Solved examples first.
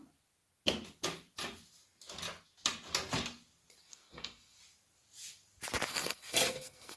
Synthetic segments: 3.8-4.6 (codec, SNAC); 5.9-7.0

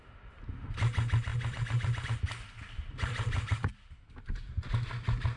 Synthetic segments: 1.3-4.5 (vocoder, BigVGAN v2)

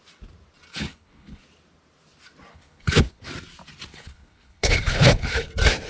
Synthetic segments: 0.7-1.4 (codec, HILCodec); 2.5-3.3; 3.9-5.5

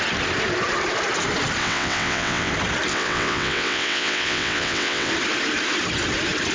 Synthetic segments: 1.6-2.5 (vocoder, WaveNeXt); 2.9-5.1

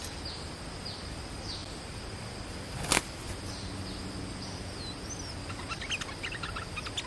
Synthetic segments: 1.6-3.3 (vocoder, BigVGAN v2)

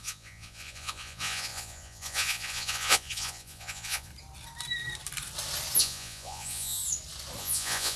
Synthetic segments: 0.0-4.1 (vocoder, Vocos); 5.8-6.8; 7.4-8.0

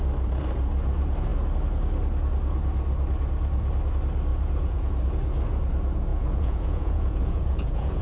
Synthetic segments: 4.3-4.9 (vocoder, Vocos); 6.1-8.0

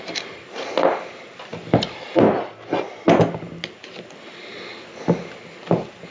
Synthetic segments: none